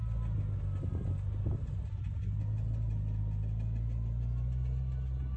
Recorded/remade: recorded